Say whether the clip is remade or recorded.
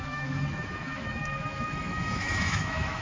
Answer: remade